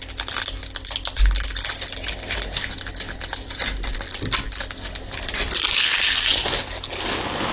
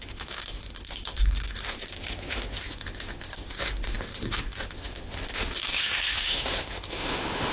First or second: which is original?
first